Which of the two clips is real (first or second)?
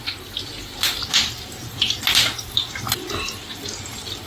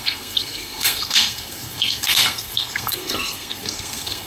first